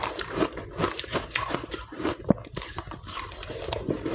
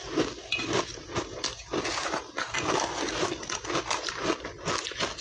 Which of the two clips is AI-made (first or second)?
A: first